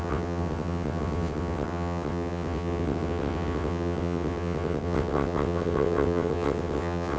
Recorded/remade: remade